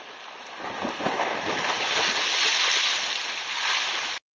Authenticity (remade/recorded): recorded